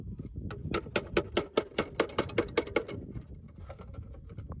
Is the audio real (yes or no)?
yes